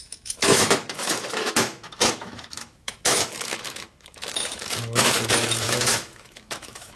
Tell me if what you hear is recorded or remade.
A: remade